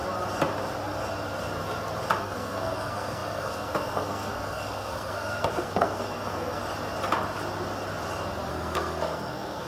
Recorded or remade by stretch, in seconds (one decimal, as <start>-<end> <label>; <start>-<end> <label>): 0.0-2.2 recorded; 2.2-6.6 remade; 6.6-8.5 recorded; 8.5-9.7 remade